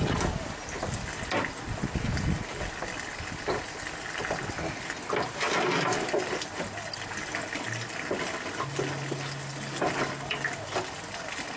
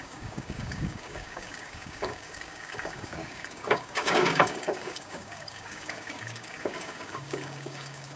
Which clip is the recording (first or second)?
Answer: first